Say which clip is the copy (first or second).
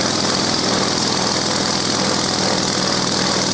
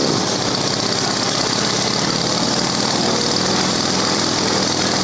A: second